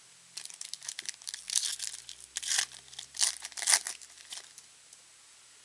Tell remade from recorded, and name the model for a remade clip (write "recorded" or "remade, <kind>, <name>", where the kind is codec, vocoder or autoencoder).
recorded